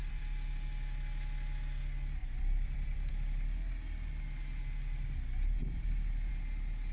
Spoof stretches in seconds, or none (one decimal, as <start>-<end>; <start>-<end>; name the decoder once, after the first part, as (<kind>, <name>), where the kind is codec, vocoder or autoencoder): 0.0-0.6 (vocoder, BigVGAN v2); 2.2-3.1; 5.6-6.3